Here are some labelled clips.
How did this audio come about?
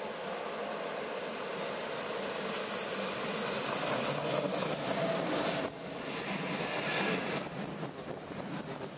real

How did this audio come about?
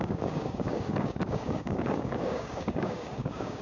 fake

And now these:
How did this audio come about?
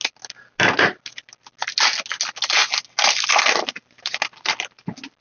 real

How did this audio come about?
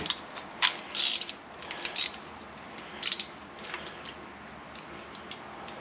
real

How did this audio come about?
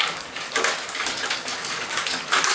fake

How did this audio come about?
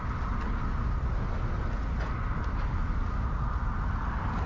real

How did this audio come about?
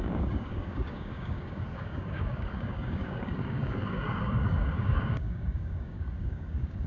fake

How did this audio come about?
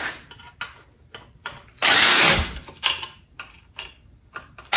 real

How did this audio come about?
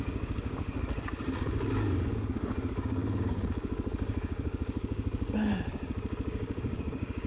fake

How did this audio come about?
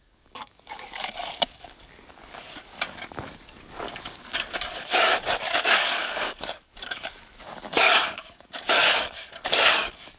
fake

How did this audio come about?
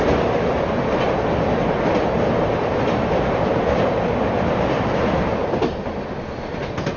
real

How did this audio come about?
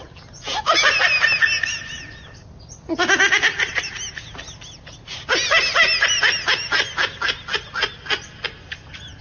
real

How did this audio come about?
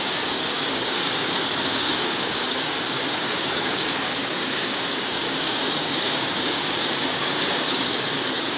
fake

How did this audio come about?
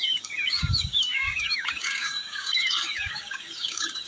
fake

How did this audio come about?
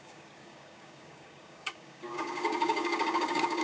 fake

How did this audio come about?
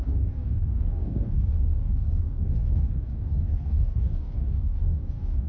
fake